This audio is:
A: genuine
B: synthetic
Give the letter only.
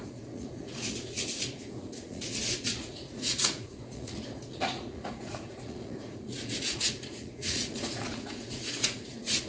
B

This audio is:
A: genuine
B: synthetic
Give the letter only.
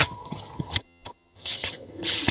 B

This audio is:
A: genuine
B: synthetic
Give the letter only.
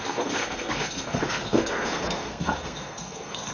B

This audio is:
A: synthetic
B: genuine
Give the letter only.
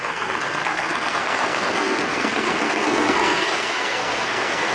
A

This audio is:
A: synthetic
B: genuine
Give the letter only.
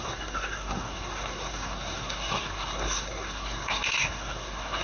A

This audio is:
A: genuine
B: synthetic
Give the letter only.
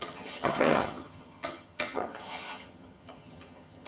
B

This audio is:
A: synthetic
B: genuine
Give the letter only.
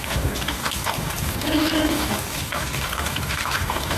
A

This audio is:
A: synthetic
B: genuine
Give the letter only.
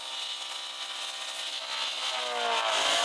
B